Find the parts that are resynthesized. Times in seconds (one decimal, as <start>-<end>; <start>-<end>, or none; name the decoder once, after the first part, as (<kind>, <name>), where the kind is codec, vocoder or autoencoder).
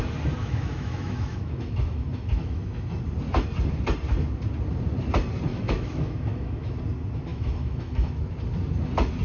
0.4-3.0 (autoencoder, DAC-VAE); 5.5-6.8; 7.3-8.1